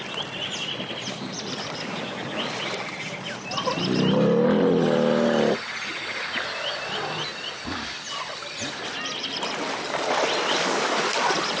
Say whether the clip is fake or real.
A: real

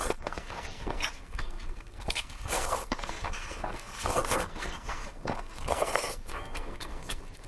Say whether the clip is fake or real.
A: fake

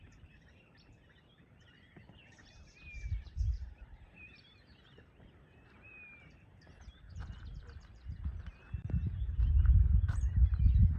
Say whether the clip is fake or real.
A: fake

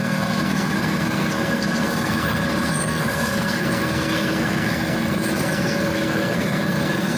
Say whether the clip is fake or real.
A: fake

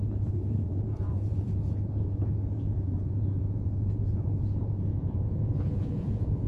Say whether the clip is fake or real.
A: fake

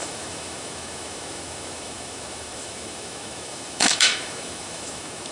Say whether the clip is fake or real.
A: fake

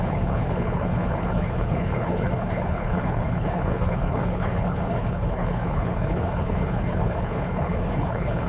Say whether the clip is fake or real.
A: fake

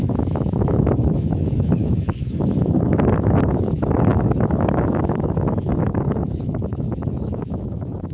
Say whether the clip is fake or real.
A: fake